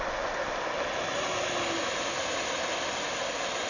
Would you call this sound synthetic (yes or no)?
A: no